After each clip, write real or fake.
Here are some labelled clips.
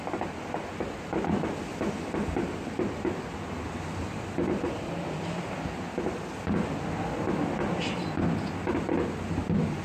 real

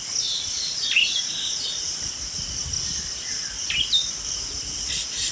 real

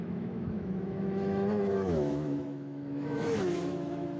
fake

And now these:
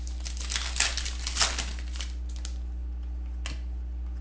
real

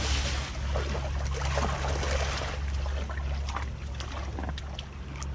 real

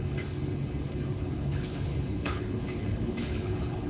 fake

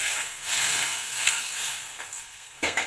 fake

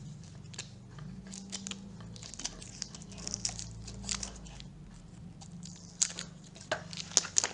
real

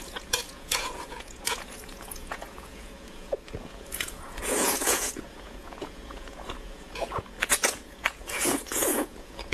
fake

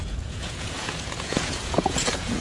fake